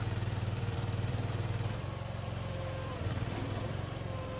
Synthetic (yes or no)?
yes